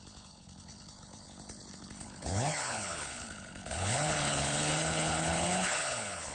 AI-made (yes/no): yes